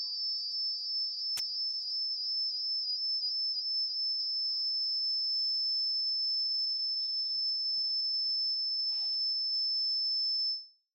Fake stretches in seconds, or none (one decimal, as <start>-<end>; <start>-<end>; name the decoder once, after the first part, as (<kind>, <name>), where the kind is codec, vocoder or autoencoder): 2.9-4.2 (autoencoder, DAC-VAE)